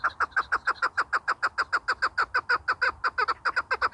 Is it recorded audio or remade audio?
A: recorded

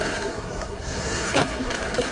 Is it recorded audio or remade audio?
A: remade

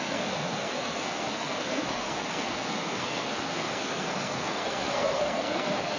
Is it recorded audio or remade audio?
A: remade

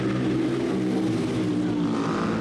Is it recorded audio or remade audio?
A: recorded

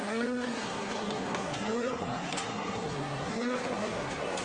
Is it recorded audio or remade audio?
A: remade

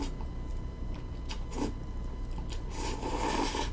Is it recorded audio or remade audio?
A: recorded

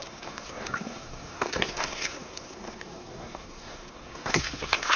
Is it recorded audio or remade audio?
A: remade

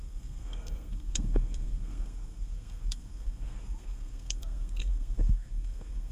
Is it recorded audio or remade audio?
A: remade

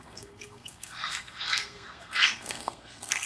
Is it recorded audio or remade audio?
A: remade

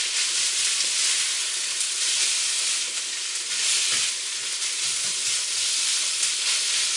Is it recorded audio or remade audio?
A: recorded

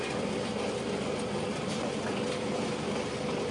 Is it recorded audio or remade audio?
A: recorded